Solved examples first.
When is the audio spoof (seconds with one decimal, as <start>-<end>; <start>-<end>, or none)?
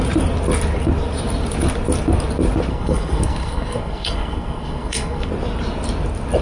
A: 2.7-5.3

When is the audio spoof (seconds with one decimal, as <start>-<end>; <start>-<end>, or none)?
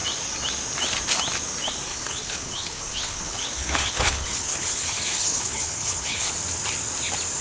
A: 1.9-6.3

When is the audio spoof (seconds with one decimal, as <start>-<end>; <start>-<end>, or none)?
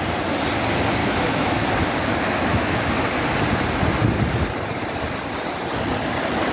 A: 1.0-1.7; 2.5-3.1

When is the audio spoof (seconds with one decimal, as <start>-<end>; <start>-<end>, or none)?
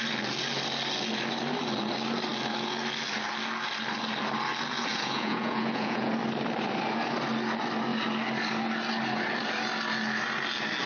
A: 4.9-6.1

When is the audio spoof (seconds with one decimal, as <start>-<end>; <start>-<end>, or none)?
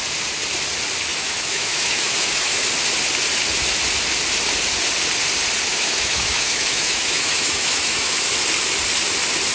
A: 1.1-2.6; 5.7-8.3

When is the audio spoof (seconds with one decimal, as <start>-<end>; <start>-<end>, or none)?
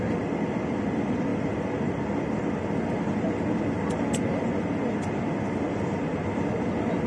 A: none